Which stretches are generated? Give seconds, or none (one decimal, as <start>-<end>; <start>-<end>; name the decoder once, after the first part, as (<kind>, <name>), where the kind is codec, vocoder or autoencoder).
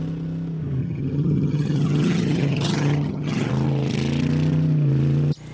0.8-3.5 (vocoder, HiFi-GAN)